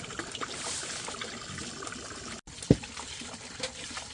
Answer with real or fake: real